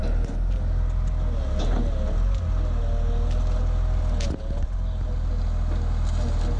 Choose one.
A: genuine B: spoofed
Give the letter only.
A